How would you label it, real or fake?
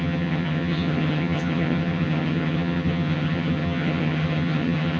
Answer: fake